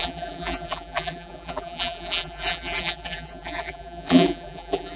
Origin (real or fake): fake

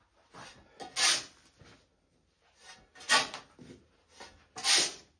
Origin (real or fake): real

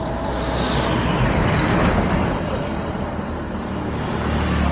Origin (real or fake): real